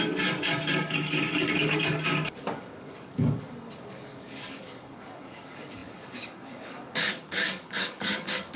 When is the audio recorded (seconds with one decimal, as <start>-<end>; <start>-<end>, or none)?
none